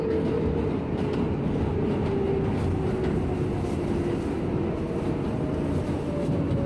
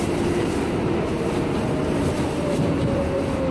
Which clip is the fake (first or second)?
second